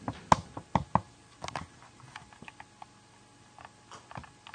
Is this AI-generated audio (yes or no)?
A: no